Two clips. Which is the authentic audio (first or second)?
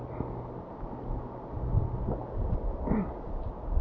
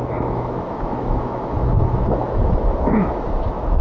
first